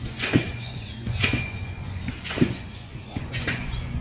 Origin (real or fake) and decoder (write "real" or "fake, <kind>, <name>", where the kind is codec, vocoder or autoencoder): fake, vocoder, Vocos